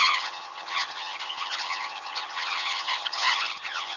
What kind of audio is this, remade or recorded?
remade